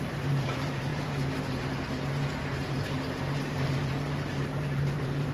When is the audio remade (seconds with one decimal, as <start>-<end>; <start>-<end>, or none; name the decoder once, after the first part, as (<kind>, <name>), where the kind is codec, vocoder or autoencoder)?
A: 0.0-5.3 (vocoder, BigVGAN v2)